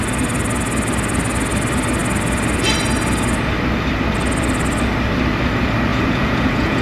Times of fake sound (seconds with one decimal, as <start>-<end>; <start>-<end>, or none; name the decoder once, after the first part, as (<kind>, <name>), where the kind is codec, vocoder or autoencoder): 5.9-6.8 (vocoder, Vocos)

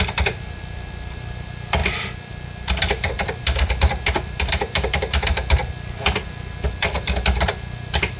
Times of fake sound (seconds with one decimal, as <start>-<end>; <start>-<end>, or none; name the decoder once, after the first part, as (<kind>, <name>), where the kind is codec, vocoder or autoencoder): 0.0-8.2 (vocoder, BigVGAN v2)

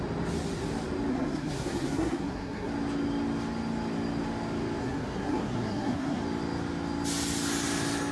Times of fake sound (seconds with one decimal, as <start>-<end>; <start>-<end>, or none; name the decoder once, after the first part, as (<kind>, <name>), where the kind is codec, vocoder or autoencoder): 1.1-2.7 (codec, SNAC); 4.8-6.2

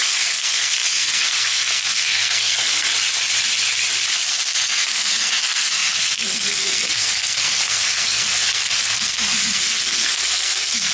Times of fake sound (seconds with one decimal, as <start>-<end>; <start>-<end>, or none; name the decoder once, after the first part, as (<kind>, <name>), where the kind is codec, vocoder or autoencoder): 0.0-2.9 (codec, SNAC); 4.3-10.9

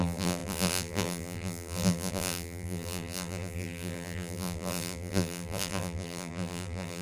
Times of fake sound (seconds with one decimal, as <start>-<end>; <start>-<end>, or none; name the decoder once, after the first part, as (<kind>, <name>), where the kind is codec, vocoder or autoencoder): 0.0-7.0 (vocoder, BigVGAN v2)

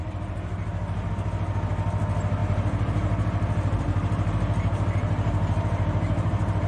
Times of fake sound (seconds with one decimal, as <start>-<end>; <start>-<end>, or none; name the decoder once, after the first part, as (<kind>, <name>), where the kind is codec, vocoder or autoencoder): 0.0-1.1 (vocoder, BigVGAN v2); 2.4-6.7